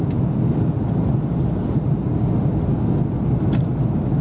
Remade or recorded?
recorded